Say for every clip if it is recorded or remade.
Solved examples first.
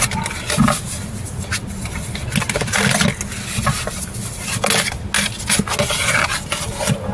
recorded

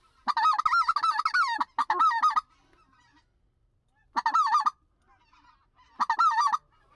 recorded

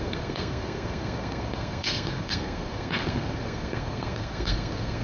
remade